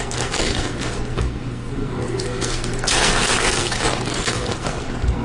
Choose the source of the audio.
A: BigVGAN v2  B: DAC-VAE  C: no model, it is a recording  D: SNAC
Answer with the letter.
D